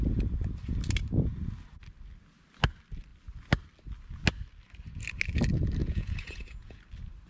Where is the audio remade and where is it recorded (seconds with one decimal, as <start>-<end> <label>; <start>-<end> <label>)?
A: 0.0-5.8 recorded; 5.8-6.8 remade; 6.8-7.3 recorded